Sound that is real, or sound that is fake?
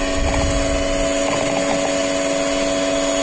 real